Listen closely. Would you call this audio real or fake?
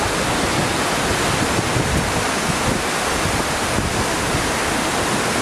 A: real